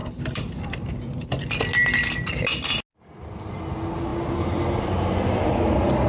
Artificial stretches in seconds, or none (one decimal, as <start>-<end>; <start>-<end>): 0.0-1.4